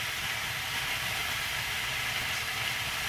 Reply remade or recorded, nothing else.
recorded